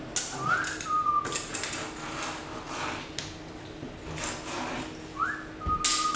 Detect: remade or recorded recorded